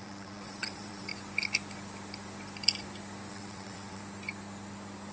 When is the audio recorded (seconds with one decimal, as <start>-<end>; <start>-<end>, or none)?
1.1-3.3; 4.0-5.1